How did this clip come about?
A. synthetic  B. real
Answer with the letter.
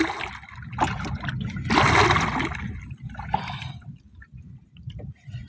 B